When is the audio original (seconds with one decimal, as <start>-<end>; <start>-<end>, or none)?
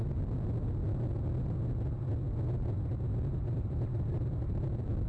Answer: 0.0-3.4